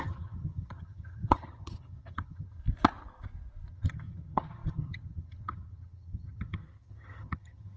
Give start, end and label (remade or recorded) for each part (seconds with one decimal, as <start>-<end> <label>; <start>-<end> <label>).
0.0-2.6 remade; 2.6-3.7 recorded; 3.7-7.8 remade